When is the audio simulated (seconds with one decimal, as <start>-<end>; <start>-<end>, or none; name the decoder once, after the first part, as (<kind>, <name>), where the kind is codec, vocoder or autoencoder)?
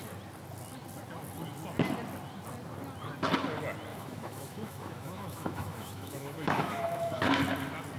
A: 3.9-7.4 (autoencoder, DAC-VAE)